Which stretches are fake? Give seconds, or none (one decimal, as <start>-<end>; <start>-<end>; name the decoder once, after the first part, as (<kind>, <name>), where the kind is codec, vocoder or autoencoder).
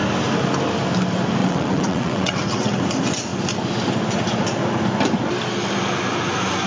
1.4-2.8 (vocoder, WaveNeXt)